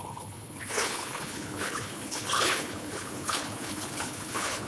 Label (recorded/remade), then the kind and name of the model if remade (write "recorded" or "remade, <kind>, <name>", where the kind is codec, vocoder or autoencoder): remade, codec, HILCodec